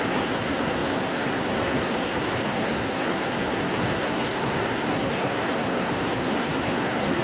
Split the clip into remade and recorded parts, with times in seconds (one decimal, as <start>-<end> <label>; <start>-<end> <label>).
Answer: 0.0-7.2 remade